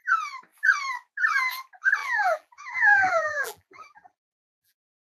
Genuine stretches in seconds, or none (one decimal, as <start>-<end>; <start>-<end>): 0.0-2.0

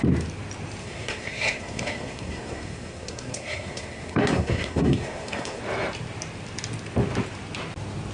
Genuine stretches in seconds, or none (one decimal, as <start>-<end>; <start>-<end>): 0.0-0.8; 5.6-8.1

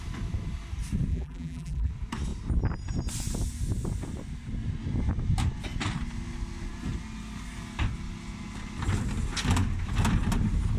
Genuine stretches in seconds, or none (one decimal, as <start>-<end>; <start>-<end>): 0.0-1.1; 1.9-10.8

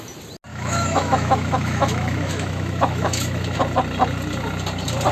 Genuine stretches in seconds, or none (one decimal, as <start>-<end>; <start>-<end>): 0.0-0.5; 3.6-5.1

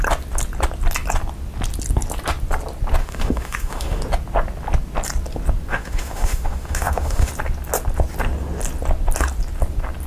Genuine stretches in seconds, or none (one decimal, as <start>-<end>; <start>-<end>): 0.0-3.0; 4.0-5.7; 7.3-10.1

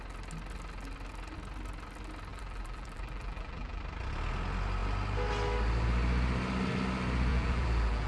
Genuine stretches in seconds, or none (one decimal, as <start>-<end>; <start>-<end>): 0.0-2.3; 3.8-7.3